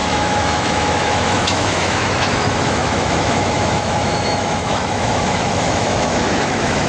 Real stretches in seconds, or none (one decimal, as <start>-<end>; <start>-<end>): none